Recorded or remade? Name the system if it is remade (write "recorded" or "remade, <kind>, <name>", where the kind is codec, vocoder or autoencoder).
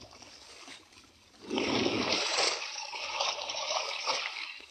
remade, codec, DAC